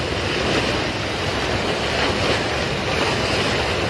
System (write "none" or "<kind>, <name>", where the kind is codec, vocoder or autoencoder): none